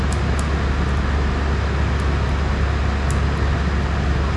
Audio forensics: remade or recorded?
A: recorded